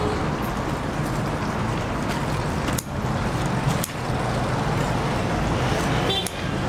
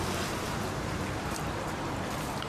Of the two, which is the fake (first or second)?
second